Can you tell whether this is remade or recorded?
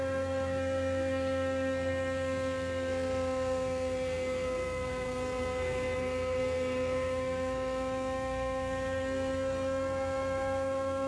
remade